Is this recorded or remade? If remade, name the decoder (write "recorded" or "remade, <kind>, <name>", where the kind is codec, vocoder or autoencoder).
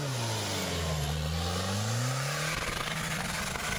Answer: recorded